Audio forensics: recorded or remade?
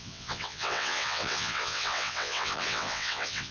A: remade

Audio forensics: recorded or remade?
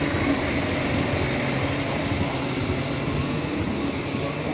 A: recorded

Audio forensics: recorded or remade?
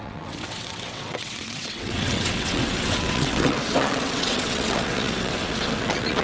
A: remade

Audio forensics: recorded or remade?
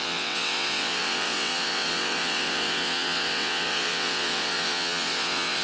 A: remade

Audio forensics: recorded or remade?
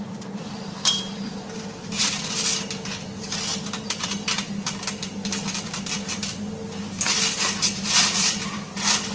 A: recorded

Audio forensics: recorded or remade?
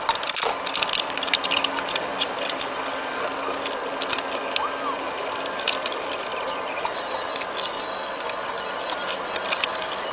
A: recorded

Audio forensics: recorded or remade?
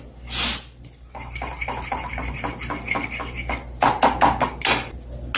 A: recorded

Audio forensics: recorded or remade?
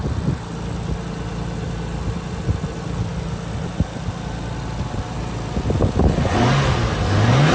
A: recorded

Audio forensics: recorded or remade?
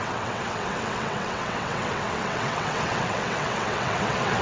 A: remade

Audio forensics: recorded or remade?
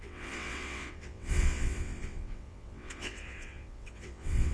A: remade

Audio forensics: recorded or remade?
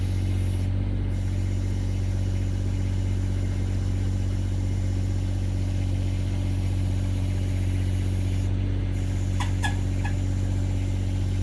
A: recorded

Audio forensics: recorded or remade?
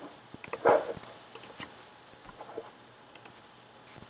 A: recorded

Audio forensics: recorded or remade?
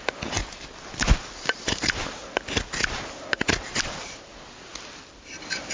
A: recorded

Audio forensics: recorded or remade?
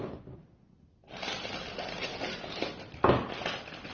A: recorded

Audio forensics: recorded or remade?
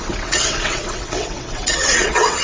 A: remade